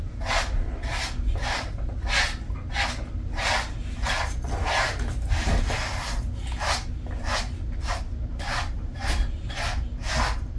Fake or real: real